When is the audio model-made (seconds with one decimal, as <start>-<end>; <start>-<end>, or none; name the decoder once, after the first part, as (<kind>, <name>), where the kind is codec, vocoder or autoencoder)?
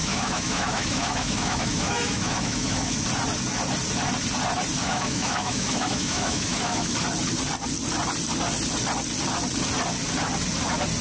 0.0-2.9 (autoencoder, DAC-VAE); 4.8-6.9